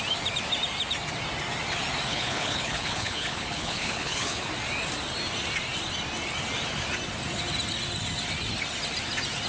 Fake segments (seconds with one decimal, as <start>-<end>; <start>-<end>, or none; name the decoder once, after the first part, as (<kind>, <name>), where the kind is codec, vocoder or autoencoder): 2.1-4.5 (codec, HILCodec)